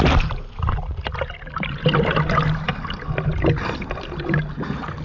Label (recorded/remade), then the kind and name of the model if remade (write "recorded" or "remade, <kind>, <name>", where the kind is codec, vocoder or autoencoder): recorded